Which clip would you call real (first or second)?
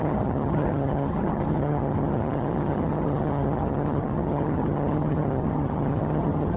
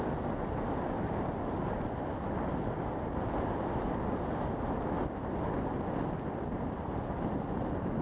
second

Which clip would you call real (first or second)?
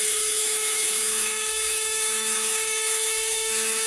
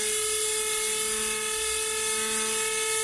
second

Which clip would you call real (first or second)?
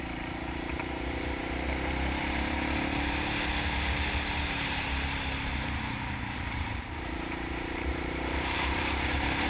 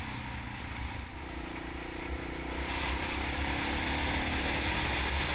second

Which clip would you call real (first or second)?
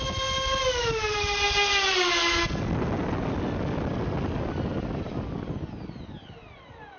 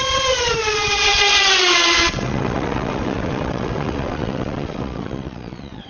first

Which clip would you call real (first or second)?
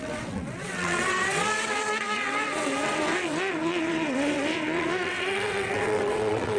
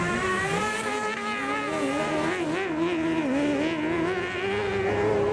second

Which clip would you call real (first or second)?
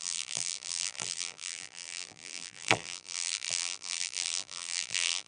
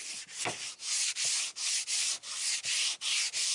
second